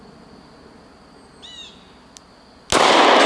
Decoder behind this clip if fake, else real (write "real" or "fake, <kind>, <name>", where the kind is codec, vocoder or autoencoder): real